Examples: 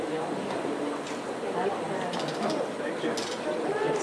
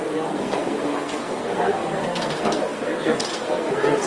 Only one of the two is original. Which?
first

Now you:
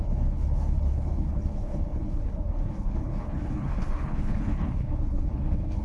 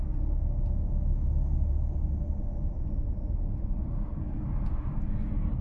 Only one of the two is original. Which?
second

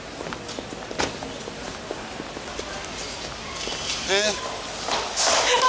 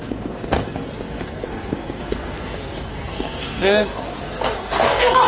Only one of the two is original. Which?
first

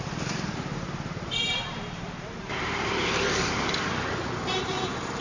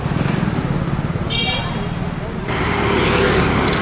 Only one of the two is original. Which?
second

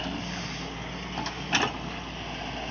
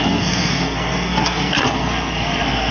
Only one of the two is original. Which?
first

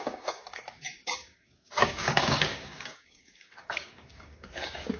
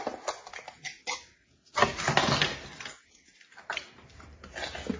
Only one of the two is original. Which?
second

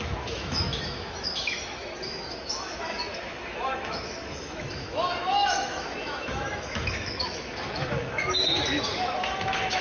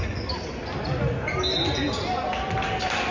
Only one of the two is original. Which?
second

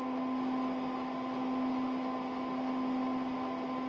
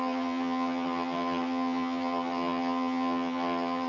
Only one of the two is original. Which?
first